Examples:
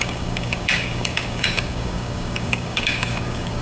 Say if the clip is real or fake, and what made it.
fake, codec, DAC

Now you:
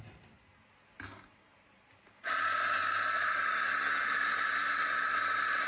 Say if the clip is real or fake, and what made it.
real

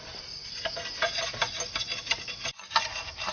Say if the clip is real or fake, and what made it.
real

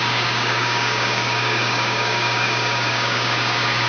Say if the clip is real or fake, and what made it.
fake, codec, DAC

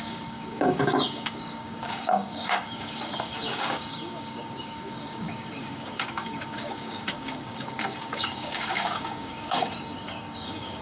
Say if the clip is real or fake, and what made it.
fake, codec, DAC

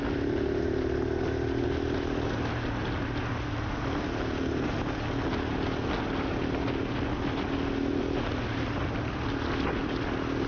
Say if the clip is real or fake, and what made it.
real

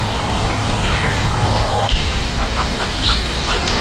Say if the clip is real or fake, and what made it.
fake, codec, DAC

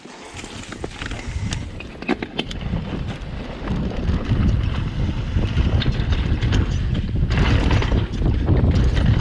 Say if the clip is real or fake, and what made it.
real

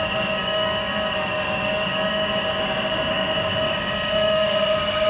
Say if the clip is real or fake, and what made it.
fake, codec, DAC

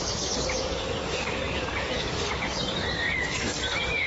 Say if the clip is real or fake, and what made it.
fake, codec, DAC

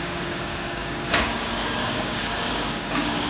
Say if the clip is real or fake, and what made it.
fake, codec, DAC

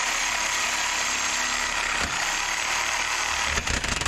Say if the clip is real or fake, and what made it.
real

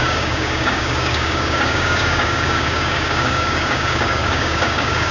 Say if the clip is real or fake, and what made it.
fake, codec, DAC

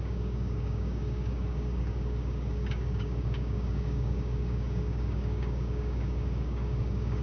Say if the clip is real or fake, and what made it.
fake, codec, DAC